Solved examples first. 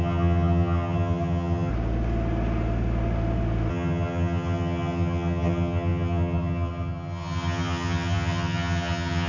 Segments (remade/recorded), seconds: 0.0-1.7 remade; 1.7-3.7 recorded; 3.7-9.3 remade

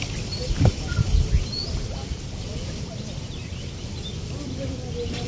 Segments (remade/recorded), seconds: 0.0-5.3 recorded

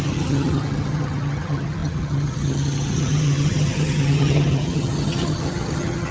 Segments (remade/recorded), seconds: 0.0-6.1 remade